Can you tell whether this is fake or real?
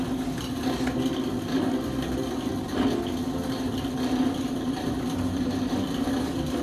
real